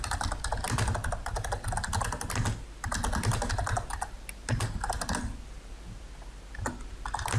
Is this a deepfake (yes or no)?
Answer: no